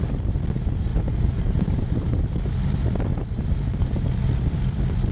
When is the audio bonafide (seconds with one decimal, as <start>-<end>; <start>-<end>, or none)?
0.0-0.9; 2.2-3.1; 4.1-5.1